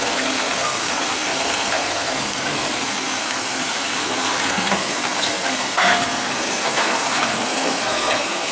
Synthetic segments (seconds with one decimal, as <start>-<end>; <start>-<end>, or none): 0.0-8.5